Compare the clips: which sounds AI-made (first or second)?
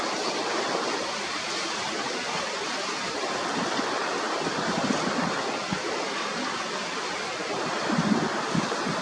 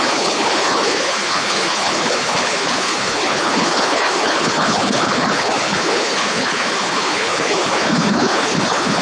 second